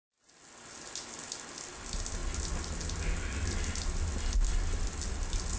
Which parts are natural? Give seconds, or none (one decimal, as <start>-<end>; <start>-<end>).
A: 0.0-5.6